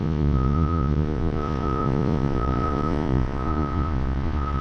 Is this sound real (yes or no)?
no